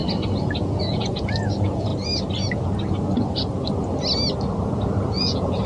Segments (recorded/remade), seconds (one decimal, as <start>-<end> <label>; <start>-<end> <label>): 0.0-0.6 recorded; 0.6-1.9 remade; 1.9-5.1 recorded; 5.1-5.7 remade